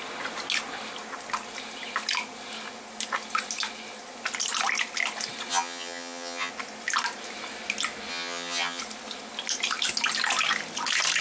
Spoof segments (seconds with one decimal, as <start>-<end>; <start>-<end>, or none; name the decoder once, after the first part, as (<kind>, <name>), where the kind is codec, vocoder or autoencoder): 5.5-6.5 (vocoder, HiFi-GAN); 8.1-8.8